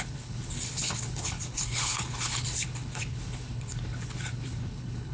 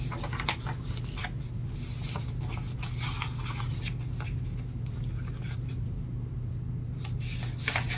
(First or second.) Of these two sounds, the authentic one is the second